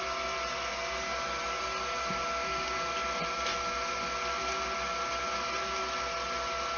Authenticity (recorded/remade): recorded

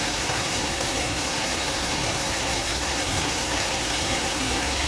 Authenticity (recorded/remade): remade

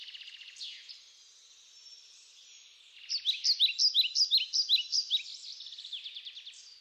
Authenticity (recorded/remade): recorded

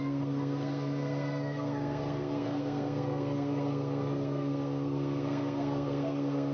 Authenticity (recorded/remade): remade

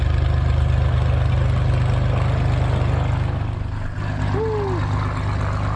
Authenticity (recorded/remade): recorded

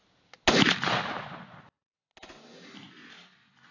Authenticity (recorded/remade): recorded